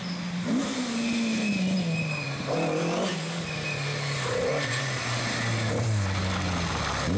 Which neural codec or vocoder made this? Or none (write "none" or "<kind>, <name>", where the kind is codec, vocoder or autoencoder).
none